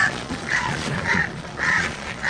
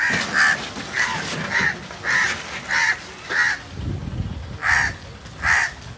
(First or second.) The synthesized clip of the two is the first